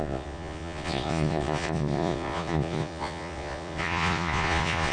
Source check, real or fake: fake